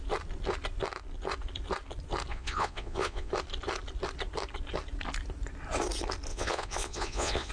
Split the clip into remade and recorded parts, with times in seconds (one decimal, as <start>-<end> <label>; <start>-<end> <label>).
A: 0.0-2.3 recorded; 2.3-3.3 remade; 3.3-6.3 recorded; 6.3-7.5 remade